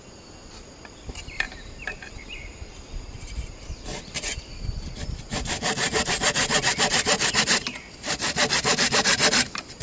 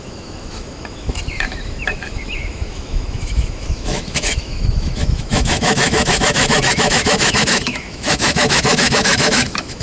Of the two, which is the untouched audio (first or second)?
first